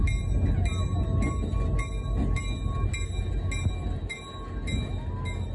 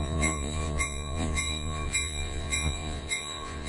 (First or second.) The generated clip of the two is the second